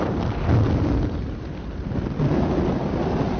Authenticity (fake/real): real